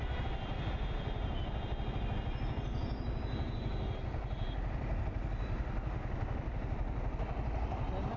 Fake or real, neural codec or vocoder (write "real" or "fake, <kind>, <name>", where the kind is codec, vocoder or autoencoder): real